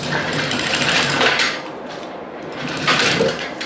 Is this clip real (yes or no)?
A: no